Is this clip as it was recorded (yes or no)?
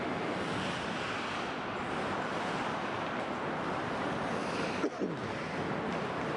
no